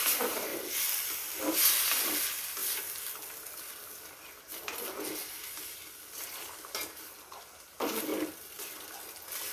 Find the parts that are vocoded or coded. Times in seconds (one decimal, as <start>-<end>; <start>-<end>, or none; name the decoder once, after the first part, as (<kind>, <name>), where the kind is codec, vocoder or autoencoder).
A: none